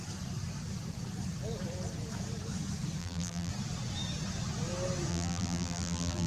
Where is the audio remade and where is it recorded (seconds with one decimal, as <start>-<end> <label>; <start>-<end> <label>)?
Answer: 0.0-3.0 recorded; 3.0-3.5 remade; 3.5-5.1 recorded; 5.1-6.3 remade